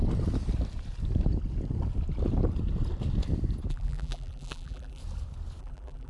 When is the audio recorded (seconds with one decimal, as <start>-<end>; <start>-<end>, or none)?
0.0-3.7; 5.0-5.6